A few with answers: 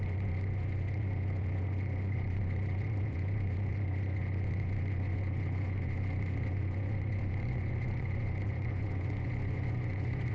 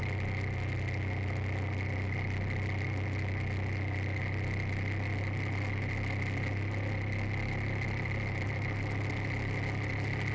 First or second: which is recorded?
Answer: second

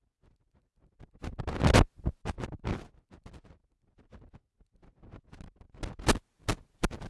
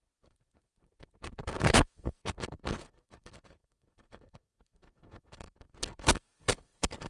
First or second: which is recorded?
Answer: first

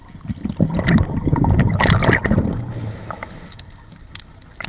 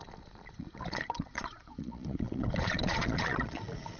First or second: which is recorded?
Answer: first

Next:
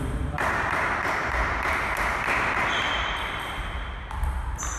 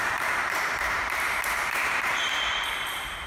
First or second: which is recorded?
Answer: first